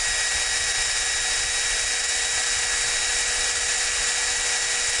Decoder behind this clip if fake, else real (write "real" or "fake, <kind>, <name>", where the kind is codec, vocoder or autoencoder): real